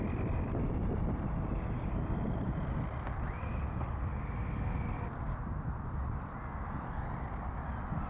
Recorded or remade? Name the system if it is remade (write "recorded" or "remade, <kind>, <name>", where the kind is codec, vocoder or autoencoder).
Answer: recorded